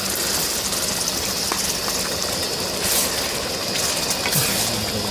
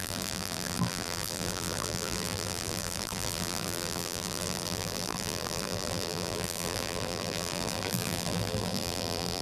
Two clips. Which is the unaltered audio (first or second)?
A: first